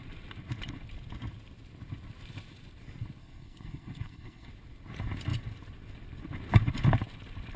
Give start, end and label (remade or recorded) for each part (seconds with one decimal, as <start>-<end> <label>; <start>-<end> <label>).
0.0-3.2 recorded; 3.2-4.5 remade; 4.5-7.6 recorded